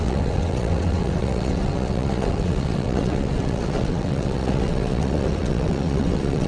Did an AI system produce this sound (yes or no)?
yes